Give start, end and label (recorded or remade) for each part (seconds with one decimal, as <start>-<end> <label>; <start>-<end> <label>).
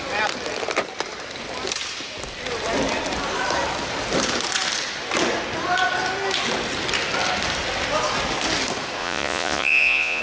0.0-9.0 recorded; 9.0-10.2 remade